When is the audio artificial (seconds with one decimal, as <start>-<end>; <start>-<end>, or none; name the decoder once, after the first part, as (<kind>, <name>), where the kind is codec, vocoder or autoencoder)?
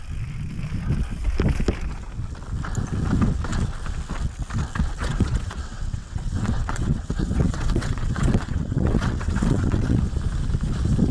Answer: 5.0-10.0 (vocoder, WaveNeXt)